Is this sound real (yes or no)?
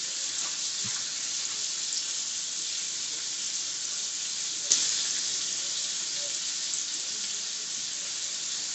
yes